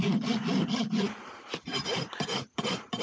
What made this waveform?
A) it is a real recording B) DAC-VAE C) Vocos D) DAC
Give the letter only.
A